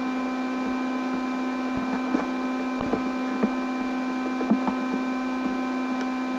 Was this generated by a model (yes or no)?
no